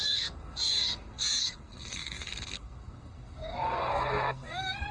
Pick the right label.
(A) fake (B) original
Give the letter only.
A